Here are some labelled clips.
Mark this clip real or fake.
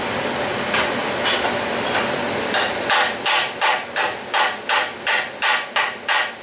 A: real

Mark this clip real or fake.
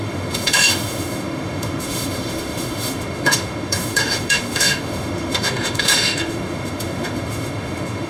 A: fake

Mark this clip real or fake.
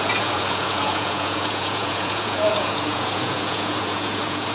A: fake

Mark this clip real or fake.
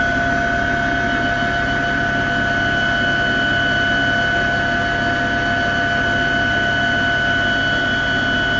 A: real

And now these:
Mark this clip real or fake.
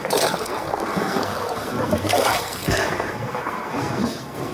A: fake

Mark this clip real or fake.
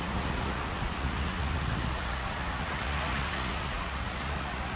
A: fake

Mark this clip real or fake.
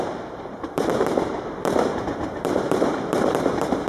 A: fake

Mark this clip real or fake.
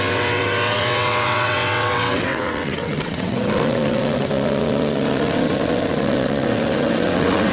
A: fake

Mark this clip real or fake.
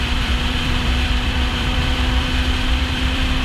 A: fake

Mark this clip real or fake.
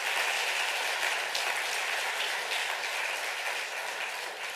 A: real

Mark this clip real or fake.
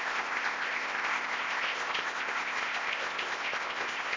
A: fake